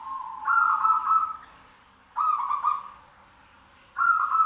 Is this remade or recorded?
recorded